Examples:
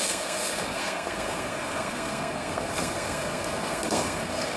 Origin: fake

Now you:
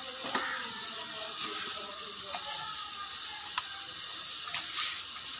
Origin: real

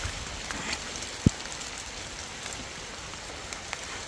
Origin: real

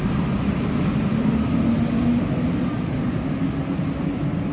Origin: real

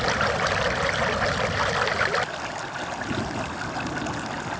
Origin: real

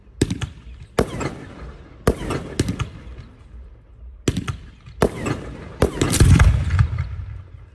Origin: real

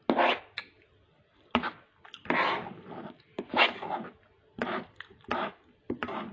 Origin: real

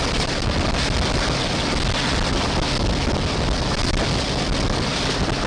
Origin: real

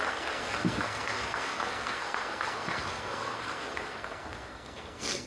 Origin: fake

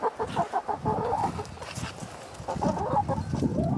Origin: real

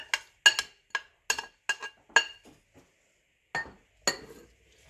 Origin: real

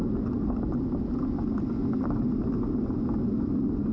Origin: real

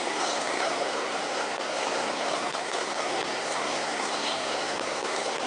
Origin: fake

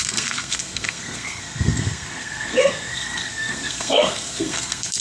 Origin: fake